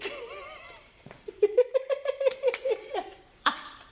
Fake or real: fake